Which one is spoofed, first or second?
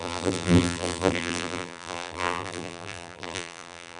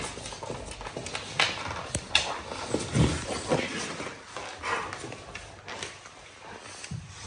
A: first